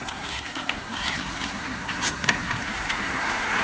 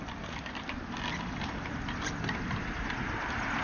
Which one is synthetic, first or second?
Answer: first